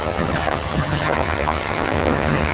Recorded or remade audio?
remade